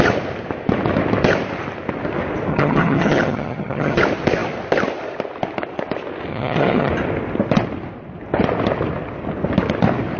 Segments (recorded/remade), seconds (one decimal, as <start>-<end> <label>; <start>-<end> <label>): 0.0-2.5 recorded; 2.5-4.0 remade; 4.0-6.3 recorded; 6.3-6.9 remade; 6.9-10.2 recorded